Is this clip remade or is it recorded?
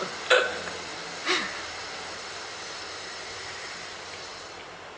recorded